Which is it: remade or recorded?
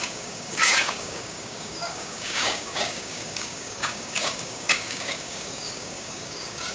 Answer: remade